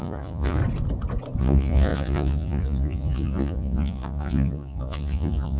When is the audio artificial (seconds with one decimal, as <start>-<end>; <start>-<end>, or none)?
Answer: 0.0-0.6; 1.4-5.6